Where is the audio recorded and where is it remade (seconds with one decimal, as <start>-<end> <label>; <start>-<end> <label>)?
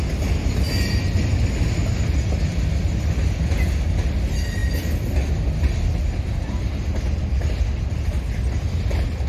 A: 0.0-9.3 recorded